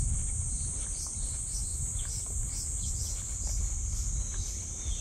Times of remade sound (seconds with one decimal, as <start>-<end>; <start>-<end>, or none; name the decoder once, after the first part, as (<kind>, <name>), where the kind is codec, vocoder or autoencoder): 0.0-1.7 (vocoder, BigVGAN v2)